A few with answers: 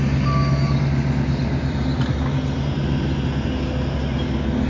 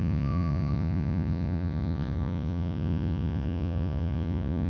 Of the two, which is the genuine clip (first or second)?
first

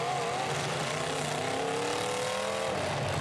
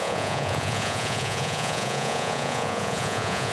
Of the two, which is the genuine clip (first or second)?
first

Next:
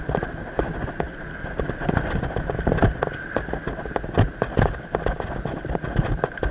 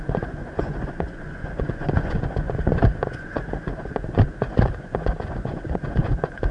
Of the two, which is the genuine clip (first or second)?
first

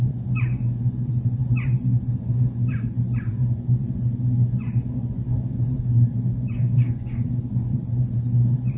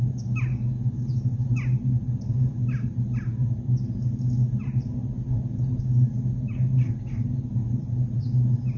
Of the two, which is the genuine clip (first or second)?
second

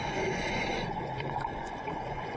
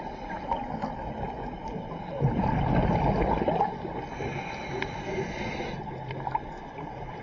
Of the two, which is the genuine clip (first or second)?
second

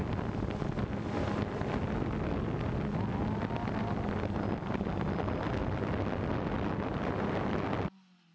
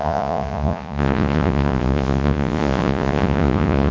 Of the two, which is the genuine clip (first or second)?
first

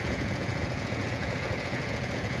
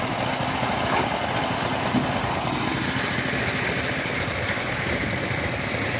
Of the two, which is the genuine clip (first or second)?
second